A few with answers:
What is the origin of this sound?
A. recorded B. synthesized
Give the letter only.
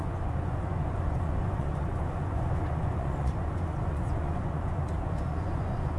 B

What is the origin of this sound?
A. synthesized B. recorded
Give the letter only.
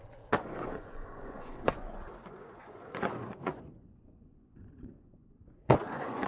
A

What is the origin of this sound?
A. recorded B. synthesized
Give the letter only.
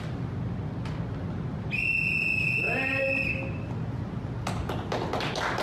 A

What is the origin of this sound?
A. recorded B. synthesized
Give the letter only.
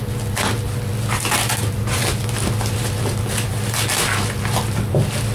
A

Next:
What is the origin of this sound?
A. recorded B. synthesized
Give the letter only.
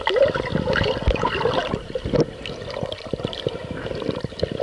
A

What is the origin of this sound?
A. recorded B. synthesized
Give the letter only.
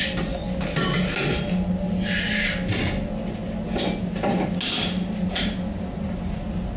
A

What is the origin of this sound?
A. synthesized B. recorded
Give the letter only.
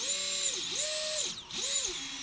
B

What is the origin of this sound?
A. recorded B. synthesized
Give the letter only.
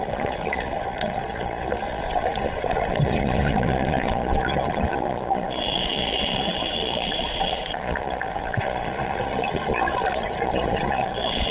B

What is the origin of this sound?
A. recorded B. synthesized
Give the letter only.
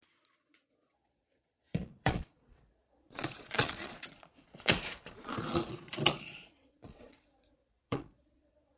B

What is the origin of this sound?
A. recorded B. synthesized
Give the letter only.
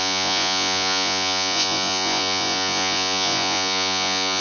B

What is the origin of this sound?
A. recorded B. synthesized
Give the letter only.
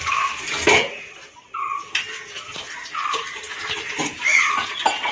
A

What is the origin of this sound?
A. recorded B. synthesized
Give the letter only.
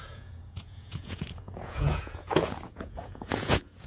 B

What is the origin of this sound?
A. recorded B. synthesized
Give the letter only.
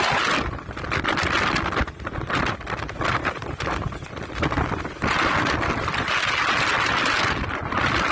A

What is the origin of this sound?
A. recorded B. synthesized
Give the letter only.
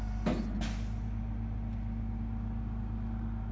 A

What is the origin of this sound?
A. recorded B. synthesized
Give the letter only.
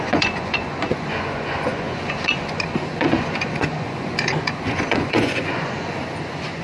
B